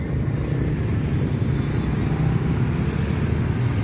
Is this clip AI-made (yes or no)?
no